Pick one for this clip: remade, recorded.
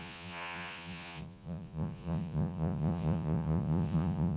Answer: remade